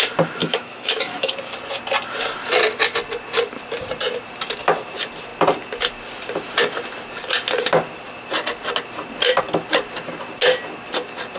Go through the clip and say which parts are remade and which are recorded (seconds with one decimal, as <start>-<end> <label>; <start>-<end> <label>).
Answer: 0.0-0.4 recorded; 0.4-1.3 remade; 1.3-11.4 recorded